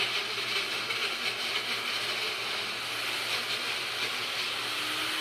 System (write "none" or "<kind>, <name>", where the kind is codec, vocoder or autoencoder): none